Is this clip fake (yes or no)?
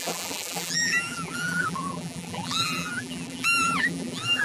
yes